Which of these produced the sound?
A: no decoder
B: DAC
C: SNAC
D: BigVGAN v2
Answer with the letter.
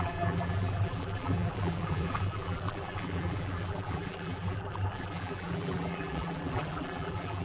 D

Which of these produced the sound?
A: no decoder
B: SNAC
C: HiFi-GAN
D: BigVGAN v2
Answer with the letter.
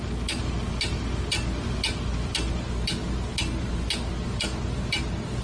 A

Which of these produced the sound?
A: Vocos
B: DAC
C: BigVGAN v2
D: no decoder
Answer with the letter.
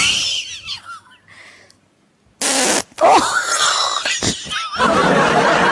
D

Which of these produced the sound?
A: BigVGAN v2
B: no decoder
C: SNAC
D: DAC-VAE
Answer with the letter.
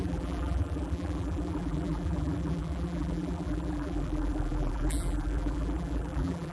A